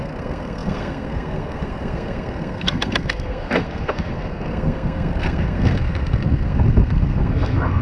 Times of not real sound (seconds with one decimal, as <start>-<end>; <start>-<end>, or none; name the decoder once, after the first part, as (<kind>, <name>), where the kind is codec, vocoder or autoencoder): 0.0-7.8 (codec, SNAC)